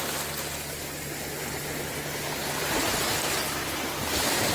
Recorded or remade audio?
recorded